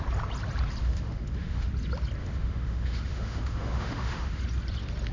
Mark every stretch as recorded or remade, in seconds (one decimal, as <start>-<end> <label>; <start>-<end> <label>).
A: 0.0-0.8 recorded; 0.8-1.7 remade; 1.7-2.2 recorded; 2.2-4.4 remade; 4.4-5.1 recorded